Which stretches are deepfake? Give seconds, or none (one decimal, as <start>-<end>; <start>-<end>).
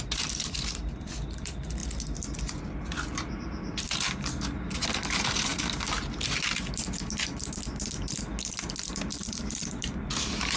0.0-1.8; 2.7-5.5; 9.3-10.6